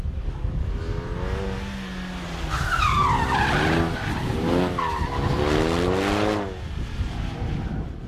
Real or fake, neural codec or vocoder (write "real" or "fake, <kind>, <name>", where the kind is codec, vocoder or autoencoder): real